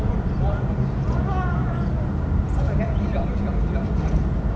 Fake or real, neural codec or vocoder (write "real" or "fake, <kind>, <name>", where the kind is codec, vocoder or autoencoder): real